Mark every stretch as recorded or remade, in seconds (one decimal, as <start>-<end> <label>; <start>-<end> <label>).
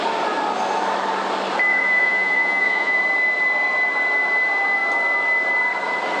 0.0-1.7 recorded; 1.7-3.0 remade; 3.0-6.2 recorded